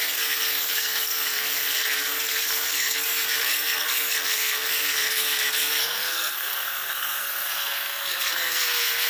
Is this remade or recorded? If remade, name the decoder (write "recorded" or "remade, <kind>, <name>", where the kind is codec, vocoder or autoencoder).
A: remade, codec, SNAC